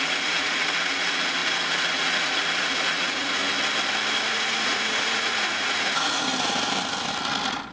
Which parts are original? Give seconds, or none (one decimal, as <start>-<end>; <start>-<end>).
3.4-4.3; 6.3-7.7

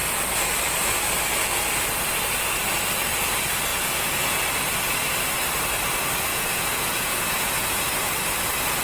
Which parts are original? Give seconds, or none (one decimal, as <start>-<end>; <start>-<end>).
0.0-3.7; 4.4-6.3; 8.1-8.8

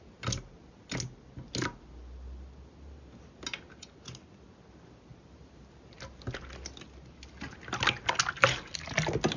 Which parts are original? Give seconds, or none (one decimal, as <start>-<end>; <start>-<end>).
0.0-9.4

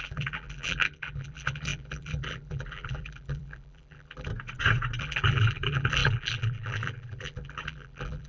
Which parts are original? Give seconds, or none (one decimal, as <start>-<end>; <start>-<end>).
4.3-5.0

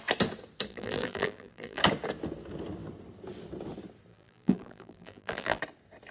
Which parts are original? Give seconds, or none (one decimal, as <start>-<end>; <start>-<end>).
0.0-0.7; 1.8-4.1; 5.6-6.1